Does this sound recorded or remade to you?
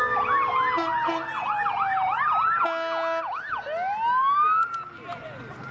recorded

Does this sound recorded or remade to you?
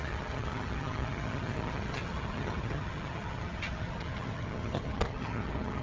remade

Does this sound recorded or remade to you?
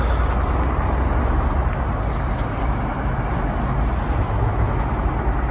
recorded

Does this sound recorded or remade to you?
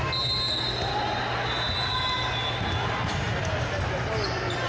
recorded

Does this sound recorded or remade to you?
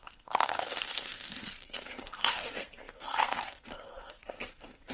remade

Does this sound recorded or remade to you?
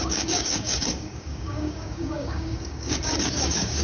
remade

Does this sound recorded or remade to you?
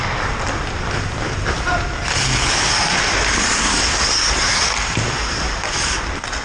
recorded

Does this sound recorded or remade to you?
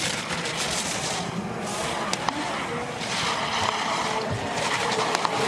recorded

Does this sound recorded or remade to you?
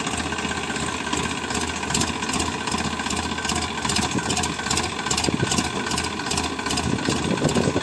recorded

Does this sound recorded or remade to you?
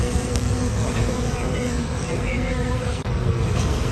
remade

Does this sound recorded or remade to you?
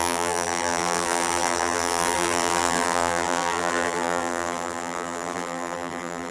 remade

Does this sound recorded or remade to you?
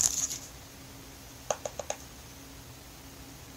recorded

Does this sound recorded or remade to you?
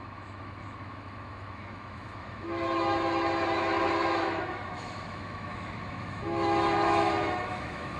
remade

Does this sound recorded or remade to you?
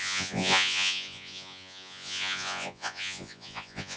remade